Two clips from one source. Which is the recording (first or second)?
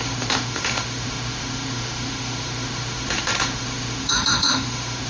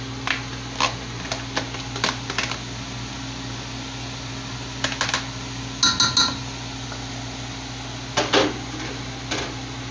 second